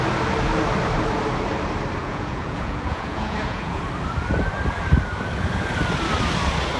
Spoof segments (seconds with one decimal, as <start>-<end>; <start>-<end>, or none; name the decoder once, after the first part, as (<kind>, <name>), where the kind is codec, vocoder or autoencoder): 2.0-3.8 (vocoder, Vocos)

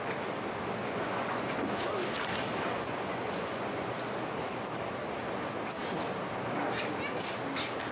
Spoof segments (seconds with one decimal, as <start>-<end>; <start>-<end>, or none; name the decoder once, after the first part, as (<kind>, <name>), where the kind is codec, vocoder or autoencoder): 0.8-1.9 (vocoder, Vocos); 2.7-3.9

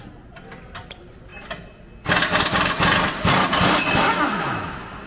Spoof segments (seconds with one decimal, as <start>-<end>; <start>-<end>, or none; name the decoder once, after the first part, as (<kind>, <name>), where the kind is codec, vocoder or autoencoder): none